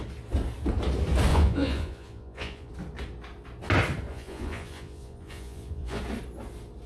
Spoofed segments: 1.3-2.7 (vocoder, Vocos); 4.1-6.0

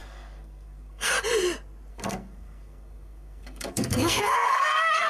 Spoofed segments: 0.0-1.1 (codec, SNAC); 1.9-5.1

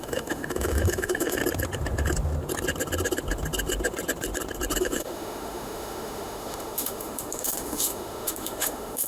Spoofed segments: 0.0-1.4 (autoencoder, DAC-VAE); 4.8-9.1

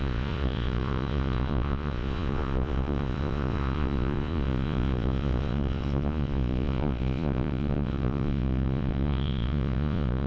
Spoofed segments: 0.0-10.3 (vocoder, Vocos)

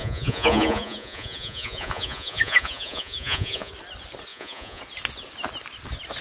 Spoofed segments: 0.0-3.7 (vocoder, Vocos); 4.3-4.8

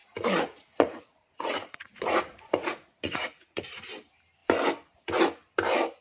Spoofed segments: 0.0-3.6 (vocoder, Vocos)

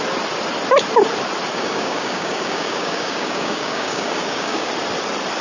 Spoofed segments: 1.5-4.7 (codec, DAC)